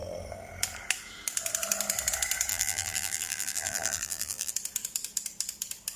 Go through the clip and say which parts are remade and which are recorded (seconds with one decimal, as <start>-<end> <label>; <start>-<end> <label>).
0.0-2.5 recorded; 2.5-4.5 remade; 4.5-6.0 recorded